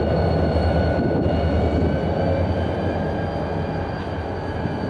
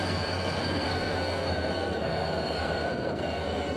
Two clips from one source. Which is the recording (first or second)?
first